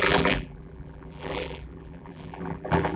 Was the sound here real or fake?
fake